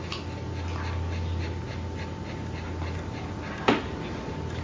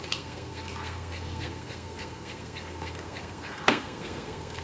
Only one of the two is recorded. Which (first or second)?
first